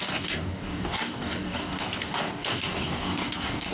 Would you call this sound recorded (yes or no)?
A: no